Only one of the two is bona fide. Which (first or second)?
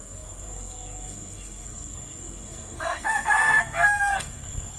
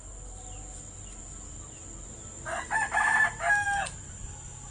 second